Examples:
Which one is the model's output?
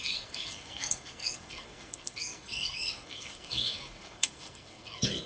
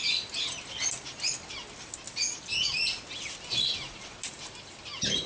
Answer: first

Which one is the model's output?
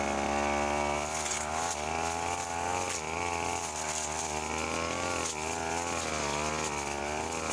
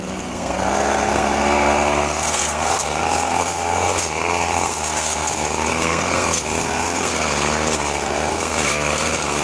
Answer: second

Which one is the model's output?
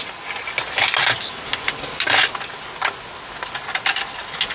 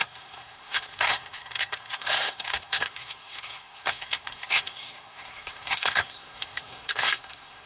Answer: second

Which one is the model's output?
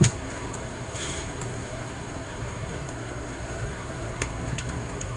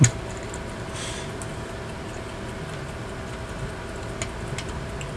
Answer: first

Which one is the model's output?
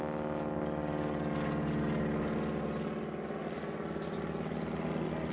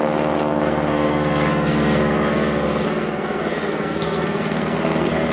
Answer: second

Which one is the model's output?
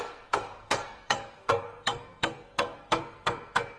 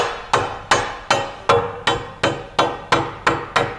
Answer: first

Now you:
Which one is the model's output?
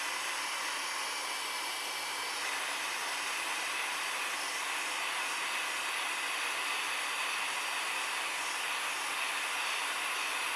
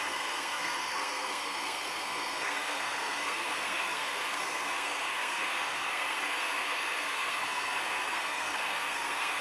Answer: second